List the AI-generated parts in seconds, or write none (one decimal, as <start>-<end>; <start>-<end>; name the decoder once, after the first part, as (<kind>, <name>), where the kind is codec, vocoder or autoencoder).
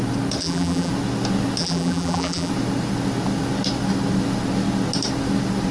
0.4-0.9 (vocoder, BigVGAN v2); 1.6-2.5